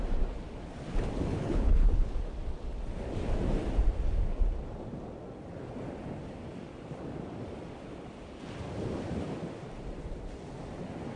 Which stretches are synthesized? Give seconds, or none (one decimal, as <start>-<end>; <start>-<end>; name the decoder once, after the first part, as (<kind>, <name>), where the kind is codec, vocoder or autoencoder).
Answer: 1.3-2.1 (codec, HILCodec)